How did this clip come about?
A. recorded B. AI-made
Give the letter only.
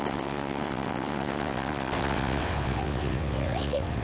B